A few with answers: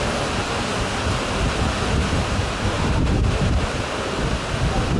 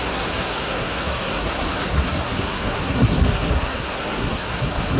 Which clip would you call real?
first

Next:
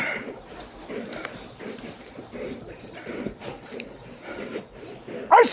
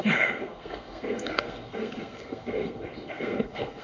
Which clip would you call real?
first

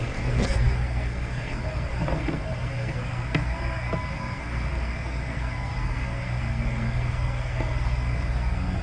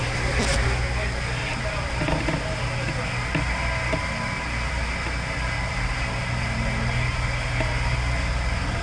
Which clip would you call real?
second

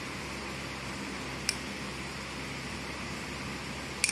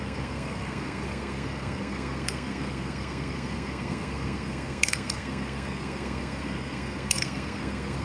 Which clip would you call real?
first